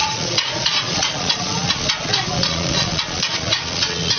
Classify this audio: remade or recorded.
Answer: remade